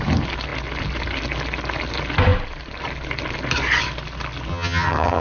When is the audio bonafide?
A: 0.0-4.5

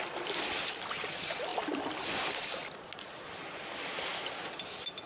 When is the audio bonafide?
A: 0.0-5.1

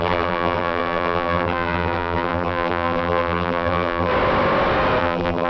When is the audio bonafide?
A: 4.1-5.0

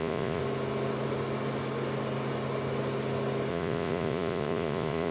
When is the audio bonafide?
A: 0.4-3.5

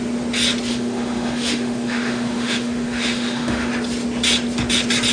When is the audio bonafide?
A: 0.0-0.7; 3.7-5.1

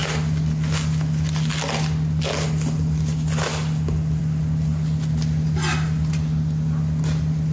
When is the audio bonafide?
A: 0.0-7.5

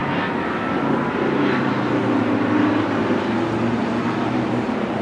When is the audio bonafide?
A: 0.0-3.8